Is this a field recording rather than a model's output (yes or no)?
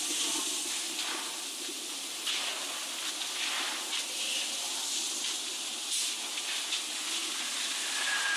yes